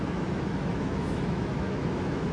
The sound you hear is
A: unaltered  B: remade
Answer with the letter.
B